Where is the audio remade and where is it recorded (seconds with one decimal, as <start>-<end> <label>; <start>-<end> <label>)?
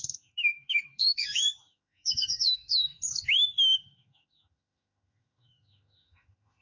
0.0-6.6 remade